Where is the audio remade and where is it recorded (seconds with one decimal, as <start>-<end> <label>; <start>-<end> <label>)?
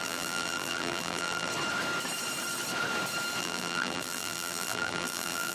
0.0-1.5 remade; 1.5-3.4 recorded; 3.4-5.5 remade